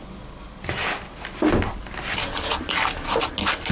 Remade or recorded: recorded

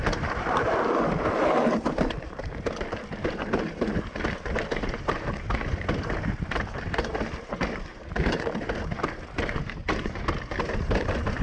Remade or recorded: remade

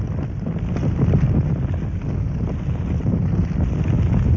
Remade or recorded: recorded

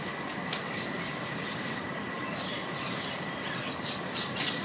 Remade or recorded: recorded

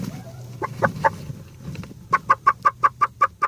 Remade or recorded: recorded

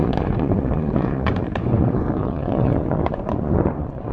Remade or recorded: remade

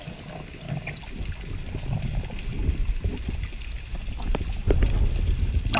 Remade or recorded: recorded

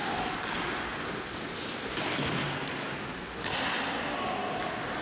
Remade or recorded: recorded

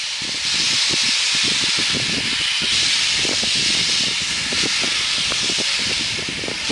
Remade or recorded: recorded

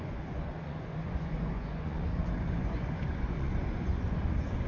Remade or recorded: remade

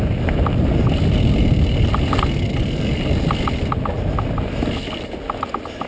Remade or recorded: recorded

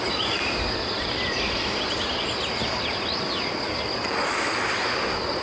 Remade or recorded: recorded